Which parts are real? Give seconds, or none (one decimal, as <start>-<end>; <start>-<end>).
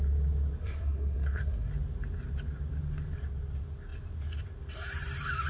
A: 0.0-0.6; 1.7-5.5